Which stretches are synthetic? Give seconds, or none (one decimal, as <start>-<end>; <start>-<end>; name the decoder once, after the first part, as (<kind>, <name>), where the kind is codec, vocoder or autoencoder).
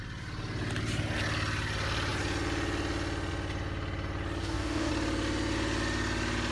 4.4-4.9 (codec, DAC)